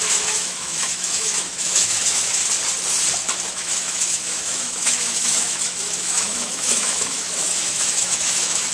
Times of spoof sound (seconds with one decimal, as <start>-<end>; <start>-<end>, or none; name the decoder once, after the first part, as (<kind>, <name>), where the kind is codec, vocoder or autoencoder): 0.0-2.4 (autoencoder, DAC-VAE); 3.5-8.7